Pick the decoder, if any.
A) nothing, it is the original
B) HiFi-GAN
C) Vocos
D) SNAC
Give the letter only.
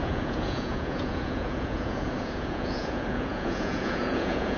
C